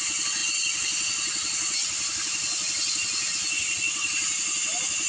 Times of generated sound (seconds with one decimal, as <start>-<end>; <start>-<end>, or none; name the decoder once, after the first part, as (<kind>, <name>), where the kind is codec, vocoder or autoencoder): none